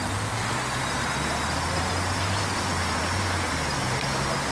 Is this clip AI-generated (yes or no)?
no